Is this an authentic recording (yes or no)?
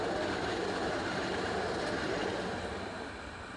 yes